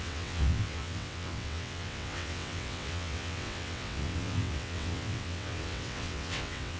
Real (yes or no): no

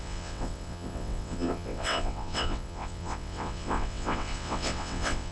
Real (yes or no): no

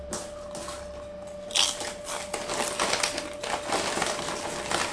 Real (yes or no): yes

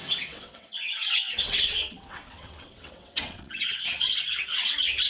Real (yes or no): no